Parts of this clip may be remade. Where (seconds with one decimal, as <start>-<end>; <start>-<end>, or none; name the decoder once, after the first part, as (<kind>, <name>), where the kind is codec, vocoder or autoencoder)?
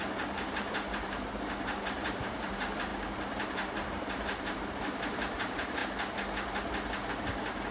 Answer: 0.0-5.8 (vocoder, BigVGAN v2); 7.1-7.7